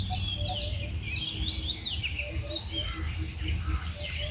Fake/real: real